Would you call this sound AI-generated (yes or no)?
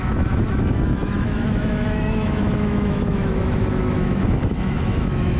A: yes